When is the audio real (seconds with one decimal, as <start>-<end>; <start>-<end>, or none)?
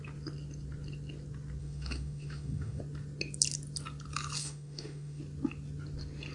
0.0-1.6; 2.8-4.4; 5.2-6.3